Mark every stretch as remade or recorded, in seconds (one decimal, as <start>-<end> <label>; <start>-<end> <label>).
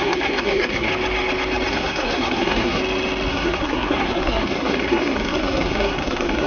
0.0-0.9 remade; 0.9-1.7 recorded; 1.7-2.8 remade; 2.8-3.3 recorded; 3.3-6.5 remade